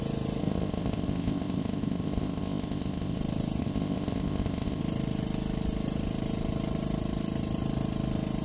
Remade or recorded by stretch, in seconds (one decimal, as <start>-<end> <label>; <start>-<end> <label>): 0.0-0.4 recorded; 0.4-3.2 remade; 3.2-3.6 recorded; 3.6-4.8 remade; 4.8-8.4 recorded